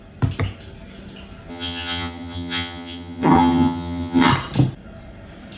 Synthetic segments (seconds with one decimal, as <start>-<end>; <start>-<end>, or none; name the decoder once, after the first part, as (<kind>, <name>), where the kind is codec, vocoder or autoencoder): 1.5-4.3 (vocoder, HiFi-GAN)